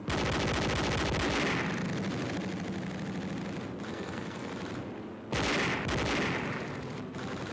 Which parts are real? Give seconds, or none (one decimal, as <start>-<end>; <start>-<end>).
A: 0.0-3.9; 4.5-7.5